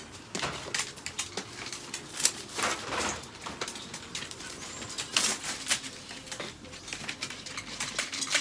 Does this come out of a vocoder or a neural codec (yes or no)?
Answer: no